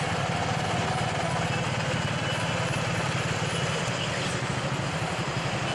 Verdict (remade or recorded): recorded